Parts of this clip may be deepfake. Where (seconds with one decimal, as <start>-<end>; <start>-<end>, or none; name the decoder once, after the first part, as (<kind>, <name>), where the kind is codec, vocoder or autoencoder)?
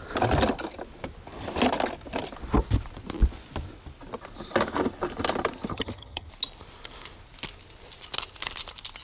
5.7-6.3 (vocoder, HiFi-GAN)